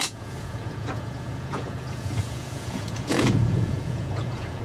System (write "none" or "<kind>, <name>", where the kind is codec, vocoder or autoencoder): vocoder, Vocos